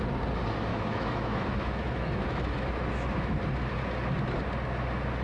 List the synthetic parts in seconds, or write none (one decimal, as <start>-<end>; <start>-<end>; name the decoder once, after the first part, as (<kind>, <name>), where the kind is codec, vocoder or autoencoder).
0.7-3.4 (autoencoder, DAC-VAE)